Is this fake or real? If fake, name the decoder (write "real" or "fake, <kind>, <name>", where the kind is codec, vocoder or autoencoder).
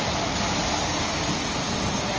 real